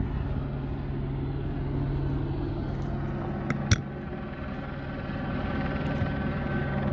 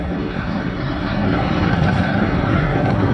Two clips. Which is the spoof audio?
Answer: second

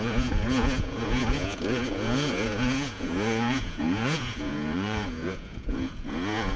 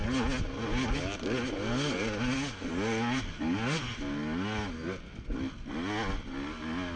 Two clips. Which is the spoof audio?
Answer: first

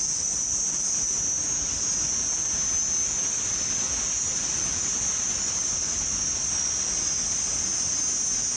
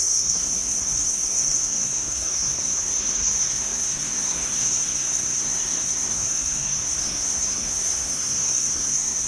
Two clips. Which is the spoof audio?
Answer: second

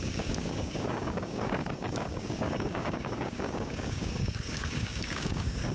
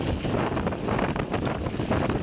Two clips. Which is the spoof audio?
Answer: first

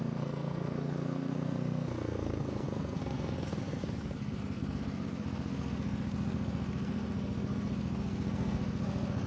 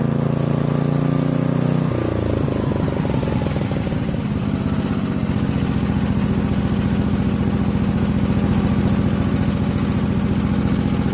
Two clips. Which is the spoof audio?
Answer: first